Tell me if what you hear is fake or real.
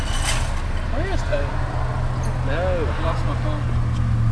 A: real